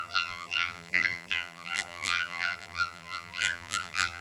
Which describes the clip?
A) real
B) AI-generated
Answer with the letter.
B